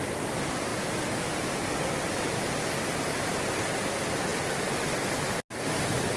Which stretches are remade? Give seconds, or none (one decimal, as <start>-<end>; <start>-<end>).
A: none